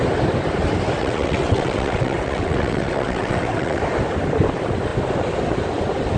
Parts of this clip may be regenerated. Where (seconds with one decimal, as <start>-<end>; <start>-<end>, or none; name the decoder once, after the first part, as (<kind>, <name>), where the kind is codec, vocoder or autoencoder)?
1.0-3.8 (vocoder, WaveNeXt)